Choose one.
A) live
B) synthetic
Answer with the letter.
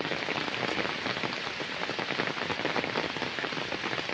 A